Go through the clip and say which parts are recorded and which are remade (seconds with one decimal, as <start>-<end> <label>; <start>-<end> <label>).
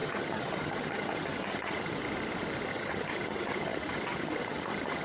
0.0-2.0 remade; 2.0-2.7 recorded; 2.7-5.0 remade